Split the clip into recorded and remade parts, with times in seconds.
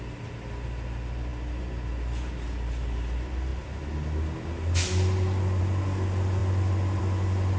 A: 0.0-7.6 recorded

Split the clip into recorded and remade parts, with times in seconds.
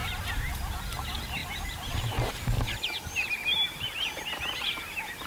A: 0.0-0.7 remade; 0.7-1.4 recorded; 1.4-2.1 remade; 2.1-2.7 recorded; 2.7-3.3 remade; 3.3-5.3 recorded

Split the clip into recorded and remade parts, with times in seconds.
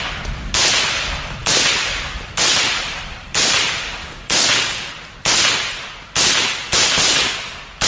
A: 0.0-4.0 recorded; 4.0-4.9 remade; 4.9-7.9 recorded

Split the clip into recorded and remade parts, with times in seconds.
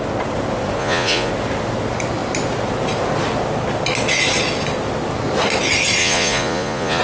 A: 0.0-0.8 recorded; 0.8-1.3 remade; 1.3-6.0 recorded; 6.0-7.0 remade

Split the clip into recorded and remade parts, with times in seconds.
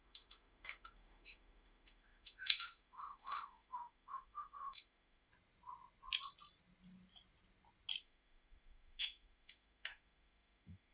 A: 0.0-5.3 remade; 5.3-8.0 recorded; 8.0-10.9 remade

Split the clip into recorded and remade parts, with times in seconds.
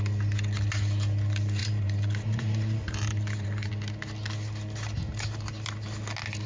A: 0.0-1.6 recorded; 1.6-3.7 remade; 3.7-6.5 recorded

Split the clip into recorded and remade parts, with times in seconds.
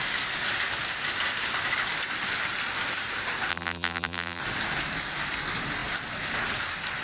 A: 0.0-3.5 recorded; 3.5-4.4 remade; 4.4-7.0 recorded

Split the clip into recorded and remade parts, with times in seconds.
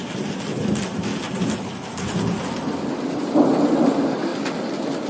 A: 0.0-5.1 recorded